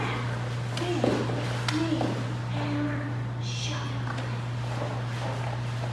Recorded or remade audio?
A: recorded